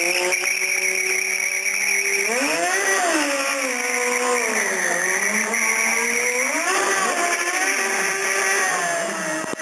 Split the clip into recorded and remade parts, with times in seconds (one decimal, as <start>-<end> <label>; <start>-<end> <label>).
0.0-9.6 recorded